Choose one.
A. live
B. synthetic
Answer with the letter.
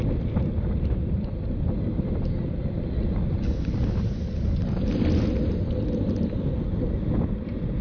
A